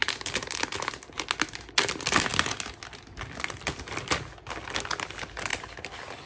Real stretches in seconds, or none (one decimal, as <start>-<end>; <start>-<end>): 0.0-6.3